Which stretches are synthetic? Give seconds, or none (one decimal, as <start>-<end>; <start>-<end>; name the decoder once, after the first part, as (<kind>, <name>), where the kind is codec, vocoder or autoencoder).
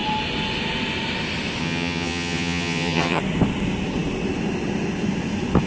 1.6-3.2 (vocoder, HiFi-GAN)